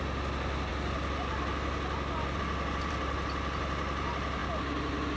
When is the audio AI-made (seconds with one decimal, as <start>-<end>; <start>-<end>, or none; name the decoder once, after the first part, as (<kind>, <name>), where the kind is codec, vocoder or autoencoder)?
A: none